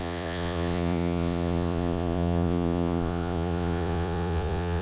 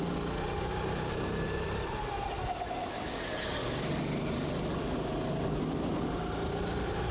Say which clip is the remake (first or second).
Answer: first